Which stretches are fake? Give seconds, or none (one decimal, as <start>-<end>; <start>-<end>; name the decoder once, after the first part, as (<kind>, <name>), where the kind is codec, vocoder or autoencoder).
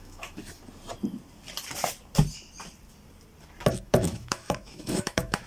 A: 0.0-0.4 (autoencoder, DAC-VAE); 3.7-5.5